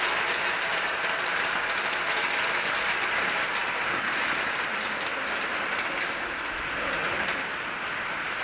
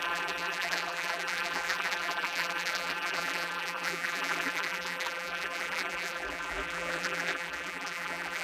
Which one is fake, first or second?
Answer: second